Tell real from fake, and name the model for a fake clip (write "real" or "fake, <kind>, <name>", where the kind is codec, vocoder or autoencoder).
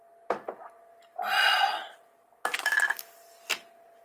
real